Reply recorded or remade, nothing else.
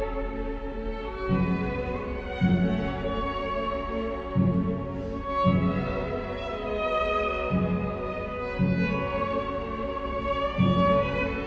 recorded